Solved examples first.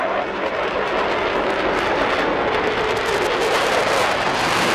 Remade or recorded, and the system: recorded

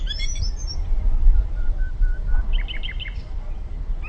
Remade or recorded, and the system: remade, vocoder, BigVGAN v2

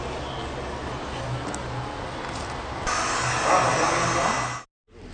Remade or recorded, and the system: recorded